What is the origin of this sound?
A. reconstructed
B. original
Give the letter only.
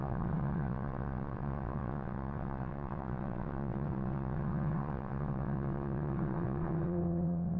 A